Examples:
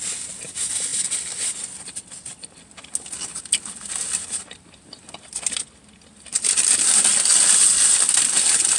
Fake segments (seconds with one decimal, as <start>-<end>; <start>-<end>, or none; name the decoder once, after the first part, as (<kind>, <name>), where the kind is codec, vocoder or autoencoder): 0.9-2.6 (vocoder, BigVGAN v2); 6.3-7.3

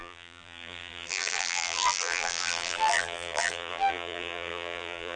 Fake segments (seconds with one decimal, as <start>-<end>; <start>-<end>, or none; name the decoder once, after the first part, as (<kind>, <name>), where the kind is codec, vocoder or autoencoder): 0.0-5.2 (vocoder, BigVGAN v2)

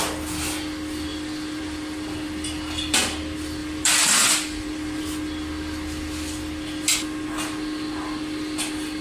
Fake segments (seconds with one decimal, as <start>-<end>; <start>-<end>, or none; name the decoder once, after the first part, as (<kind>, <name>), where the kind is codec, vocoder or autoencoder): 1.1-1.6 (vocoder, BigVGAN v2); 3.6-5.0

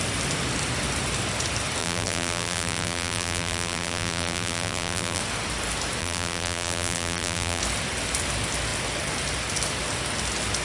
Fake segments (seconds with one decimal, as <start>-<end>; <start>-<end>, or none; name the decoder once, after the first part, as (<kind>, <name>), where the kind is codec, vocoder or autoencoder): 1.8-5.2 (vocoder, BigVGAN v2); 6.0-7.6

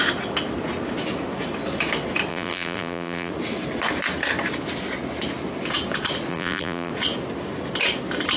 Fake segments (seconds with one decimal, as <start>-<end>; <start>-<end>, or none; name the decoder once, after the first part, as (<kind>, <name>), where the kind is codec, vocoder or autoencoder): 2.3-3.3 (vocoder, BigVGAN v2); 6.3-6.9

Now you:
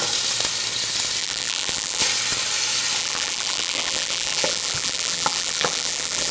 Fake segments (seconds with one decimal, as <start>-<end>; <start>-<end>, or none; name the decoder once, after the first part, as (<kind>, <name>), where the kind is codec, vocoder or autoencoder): 1.2-2.0 (vocoder, BigVGAN v2); 3.0-6.3